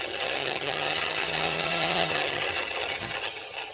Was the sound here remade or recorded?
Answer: remade